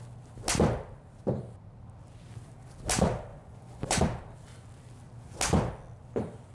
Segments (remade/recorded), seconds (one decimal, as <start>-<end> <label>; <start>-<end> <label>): 0.0-3.3 recorded; 3.3-4.0 remade; 4.0-6.5 recorded